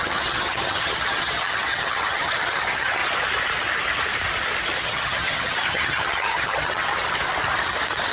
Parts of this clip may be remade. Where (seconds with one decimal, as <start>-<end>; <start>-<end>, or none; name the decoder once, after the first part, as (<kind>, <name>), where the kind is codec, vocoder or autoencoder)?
0.0-3.0 (vocoder, HiFi-GAN); 4.8-6.9